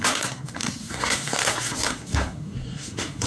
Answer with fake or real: fake